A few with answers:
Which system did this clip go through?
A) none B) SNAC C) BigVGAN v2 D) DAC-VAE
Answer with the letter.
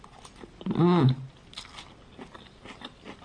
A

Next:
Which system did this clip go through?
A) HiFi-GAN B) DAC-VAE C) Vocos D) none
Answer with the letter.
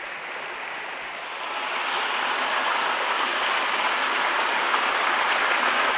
D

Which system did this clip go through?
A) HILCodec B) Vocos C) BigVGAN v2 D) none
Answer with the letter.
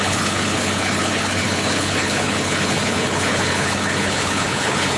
A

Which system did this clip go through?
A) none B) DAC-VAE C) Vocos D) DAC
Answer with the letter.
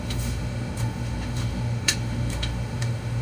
B